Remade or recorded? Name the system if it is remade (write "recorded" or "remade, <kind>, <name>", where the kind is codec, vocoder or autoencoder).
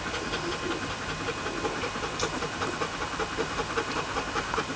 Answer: recorded